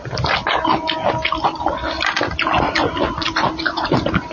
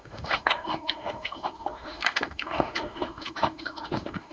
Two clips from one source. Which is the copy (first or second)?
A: second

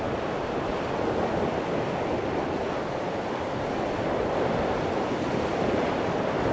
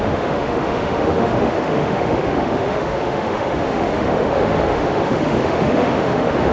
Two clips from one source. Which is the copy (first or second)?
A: second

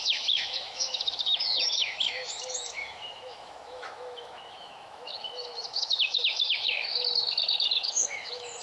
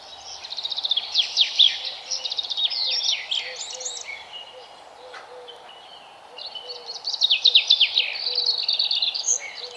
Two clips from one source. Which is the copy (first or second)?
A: first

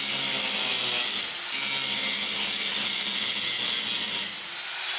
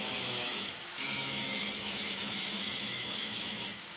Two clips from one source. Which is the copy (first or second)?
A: second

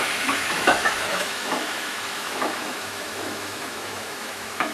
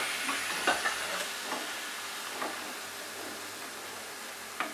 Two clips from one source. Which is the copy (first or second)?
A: first